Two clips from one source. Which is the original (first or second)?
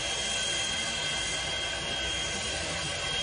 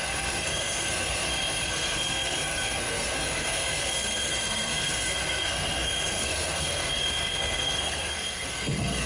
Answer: first